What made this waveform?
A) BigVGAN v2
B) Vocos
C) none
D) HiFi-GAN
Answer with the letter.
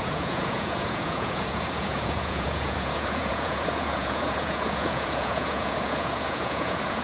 B